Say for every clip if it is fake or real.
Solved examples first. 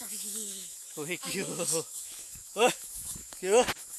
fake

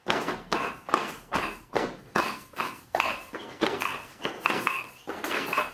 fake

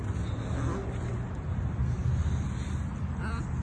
real